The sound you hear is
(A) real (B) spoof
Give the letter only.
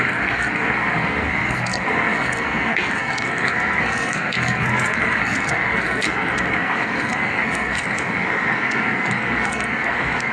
B